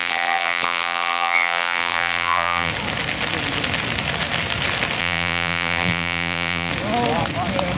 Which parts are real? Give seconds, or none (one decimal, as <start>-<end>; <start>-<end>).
2.7-5.0; 6.7-7.8